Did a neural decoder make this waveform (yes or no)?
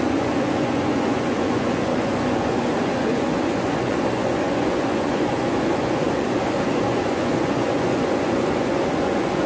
yes